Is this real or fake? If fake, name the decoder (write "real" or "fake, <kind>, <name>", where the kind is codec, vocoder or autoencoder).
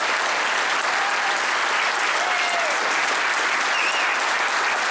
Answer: real